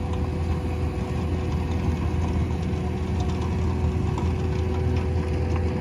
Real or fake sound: real